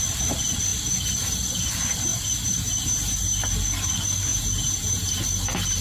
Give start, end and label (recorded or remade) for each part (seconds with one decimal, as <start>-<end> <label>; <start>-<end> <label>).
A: 0.0-4.3 recorded; 4.3-5.1 remade; 5.1-5.8 recorded